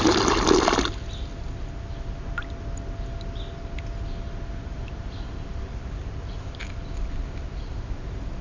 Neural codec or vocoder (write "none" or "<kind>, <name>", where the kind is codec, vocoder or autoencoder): none